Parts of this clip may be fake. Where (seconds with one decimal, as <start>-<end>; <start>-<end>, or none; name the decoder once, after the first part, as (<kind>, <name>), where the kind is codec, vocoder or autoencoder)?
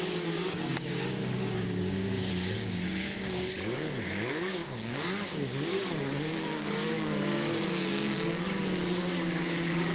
0.0-9.9 (codec, DAC)